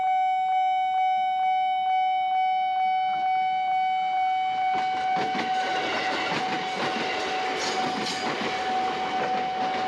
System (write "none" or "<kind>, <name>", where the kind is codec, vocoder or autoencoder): none